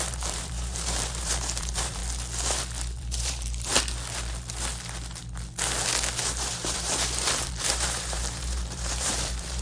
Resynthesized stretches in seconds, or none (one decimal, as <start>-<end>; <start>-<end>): 0.0-2.0; 3.0-3.7; 6.2-9.6

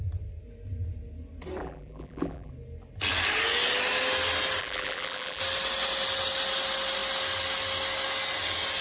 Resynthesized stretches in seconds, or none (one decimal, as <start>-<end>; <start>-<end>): 1.6-2.5; 4.6-5.4

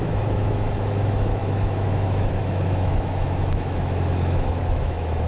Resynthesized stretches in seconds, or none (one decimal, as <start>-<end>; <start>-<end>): 0.0-5.3

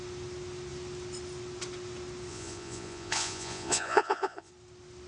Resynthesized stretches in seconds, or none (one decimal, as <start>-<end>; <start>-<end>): 2.3-4.5